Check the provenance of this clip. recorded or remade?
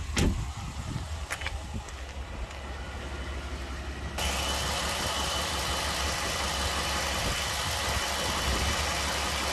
recorded